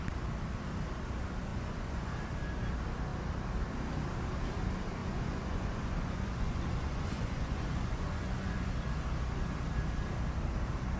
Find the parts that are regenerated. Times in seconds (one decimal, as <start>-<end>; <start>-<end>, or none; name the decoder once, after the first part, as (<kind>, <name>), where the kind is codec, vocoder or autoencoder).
1.5-2.1 (vocoder, Vocos); 5.0-8.7

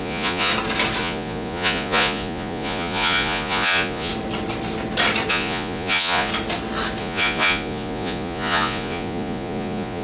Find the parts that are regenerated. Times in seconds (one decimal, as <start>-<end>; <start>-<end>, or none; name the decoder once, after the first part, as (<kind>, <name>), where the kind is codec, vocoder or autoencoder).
0.0-0.5 (vocoder, Vocos); 1.0-4.1; 5.3-6.3; 7.0-10.0

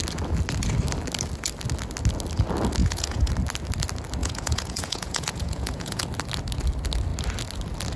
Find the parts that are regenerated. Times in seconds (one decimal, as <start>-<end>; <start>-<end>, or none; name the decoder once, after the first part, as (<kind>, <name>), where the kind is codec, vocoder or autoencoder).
2.8-3.3 (vocoder, Vocos); 4.2-6.0

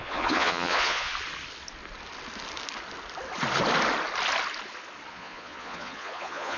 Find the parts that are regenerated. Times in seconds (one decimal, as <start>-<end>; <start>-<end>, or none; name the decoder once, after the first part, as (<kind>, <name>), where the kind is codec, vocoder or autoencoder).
0.0-1.1 (vocoder, Vocos); 5.1-6.6

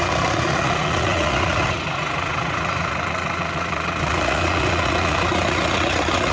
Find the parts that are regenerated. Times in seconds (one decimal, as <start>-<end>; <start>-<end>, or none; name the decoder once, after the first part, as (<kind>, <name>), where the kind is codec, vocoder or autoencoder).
0.0-6.3 (vocoder, Vocos)

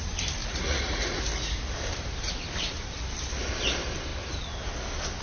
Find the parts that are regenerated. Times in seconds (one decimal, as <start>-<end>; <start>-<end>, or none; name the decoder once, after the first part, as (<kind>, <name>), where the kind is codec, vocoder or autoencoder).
0.4-1.2 (vocoder, Vocos)